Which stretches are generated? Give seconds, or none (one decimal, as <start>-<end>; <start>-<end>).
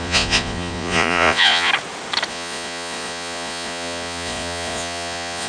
0.0-1.7; 2.3-5.5